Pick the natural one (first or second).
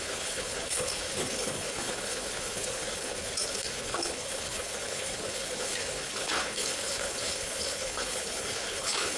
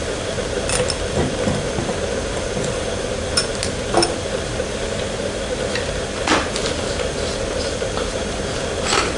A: second